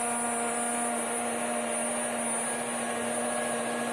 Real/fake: real